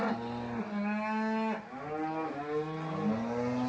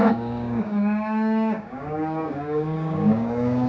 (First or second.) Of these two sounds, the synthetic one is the second